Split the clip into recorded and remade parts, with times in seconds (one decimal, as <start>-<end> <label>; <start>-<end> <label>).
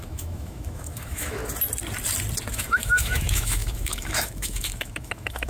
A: 0.0-1.4 remade; 1.4-2.5 recorded; 2.5-5.5 remade